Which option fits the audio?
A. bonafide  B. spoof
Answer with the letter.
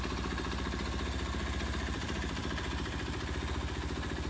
A